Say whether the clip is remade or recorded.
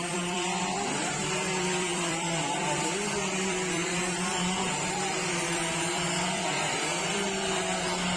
remade